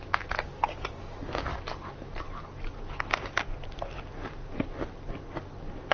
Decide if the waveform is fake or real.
real